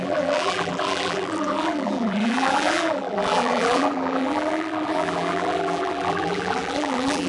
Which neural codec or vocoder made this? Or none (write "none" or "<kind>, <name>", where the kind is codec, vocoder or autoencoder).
vocoder, BigVGAN v2